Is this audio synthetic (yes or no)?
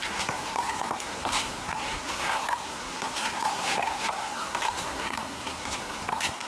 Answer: yes